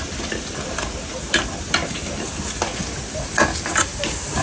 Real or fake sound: real